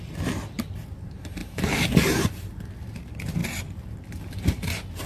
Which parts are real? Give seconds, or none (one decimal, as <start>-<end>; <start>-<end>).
0.0-1.4; 2.3-5.1